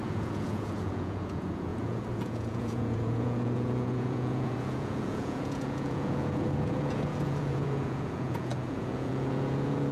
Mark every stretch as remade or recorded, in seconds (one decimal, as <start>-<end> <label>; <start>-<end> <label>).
0.0-9.9 remade